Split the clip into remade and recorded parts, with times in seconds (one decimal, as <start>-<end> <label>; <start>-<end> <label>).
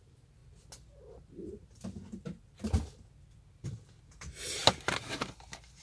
0.0-5.8 recorded